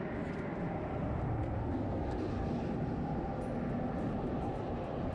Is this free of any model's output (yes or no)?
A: yes